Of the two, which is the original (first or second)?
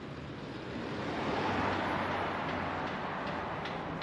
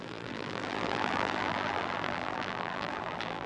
first